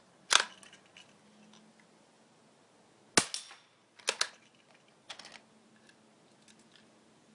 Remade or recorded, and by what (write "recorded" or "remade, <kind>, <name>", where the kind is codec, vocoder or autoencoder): recorded